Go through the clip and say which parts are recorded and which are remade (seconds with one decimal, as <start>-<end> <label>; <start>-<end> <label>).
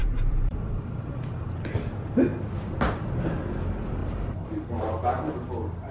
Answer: 0.0-1.6 remade; 1.6-4.0 recorded; 4.0-4.7 remade; 4.7-5.9 recorded